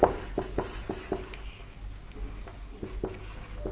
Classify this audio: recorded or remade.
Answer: recorded